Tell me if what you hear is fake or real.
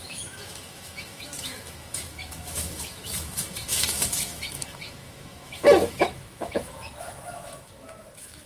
fake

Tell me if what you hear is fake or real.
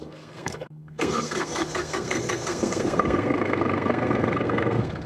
fake